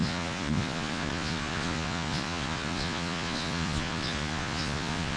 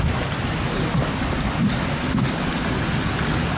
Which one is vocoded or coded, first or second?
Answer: first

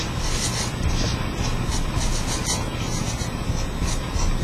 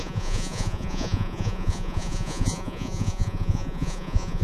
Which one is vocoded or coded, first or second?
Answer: second